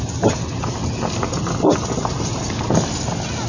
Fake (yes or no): no